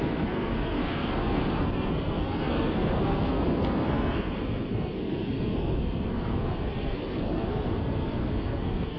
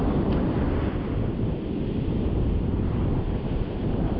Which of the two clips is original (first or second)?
second